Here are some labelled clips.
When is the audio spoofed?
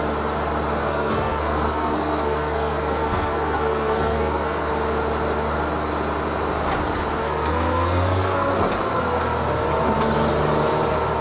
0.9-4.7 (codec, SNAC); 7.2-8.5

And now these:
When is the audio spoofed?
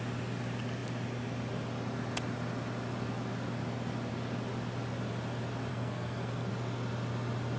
5.7-6.5 (codec, SNAC)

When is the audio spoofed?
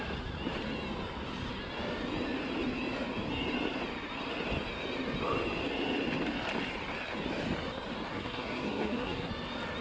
8.1-9.3 (codec, SNAC)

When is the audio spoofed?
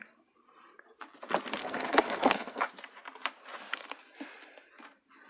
1.6-2.6 (codec, SNAC)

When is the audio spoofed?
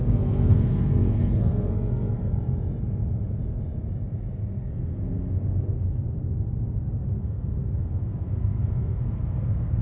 0.0-2.3 (codec, SNAC); 7.2-9.8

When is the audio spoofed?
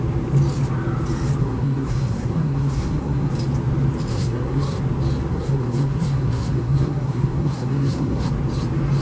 1.4-3.3 (codec, SNAC); 4.1-4.8; 5.3-8.3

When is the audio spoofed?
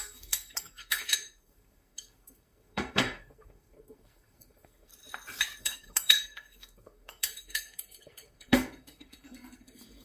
0.0-4.9 (codec, SNAC); 5.6-10.0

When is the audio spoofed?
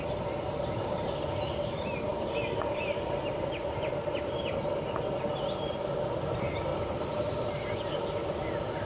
none